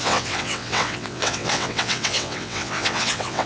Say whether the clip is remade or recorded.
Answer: remade